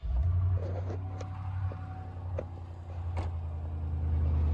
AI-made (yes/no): no